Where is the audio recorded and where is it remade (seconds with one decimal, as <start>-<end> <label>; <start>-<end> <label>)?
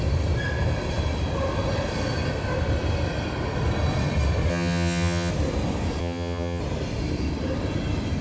0.0-4.5 recorded; 4.5-5.3 remade; 5.3-6.0 recorded; 6.0-6.6 remade; 6.6-8.2 recorded